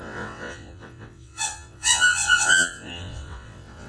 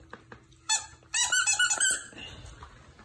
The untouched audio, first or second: second